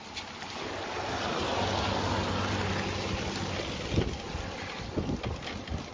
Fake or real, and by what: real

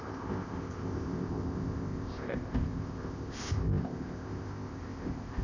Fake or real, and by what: fake, codec, ZipCodec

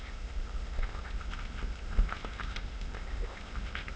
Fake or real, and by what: fake, codec, ZipCodec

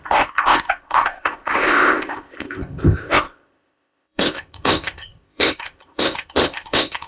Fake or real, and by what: fake, codec, ZipCodec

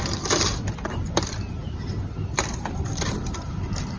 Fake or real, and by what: real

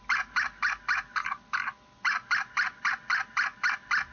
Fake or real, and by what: real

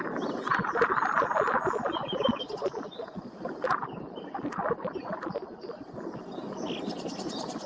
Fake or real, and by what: real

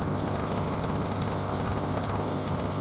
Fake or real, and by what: fake, codec, ZipCodec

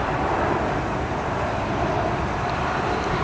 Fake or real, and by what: real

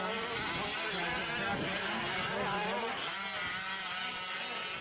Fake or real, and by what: real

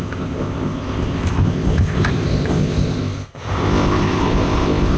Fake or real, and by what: fake, codec, ZipCodec